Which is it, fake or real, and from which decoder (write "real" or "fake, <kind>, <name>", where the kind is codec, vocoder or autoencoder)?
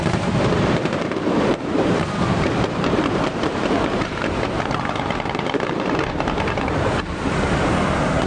fake, vocoder, BigVGAN v2